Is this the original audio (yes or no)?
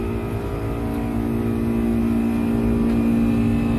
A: yes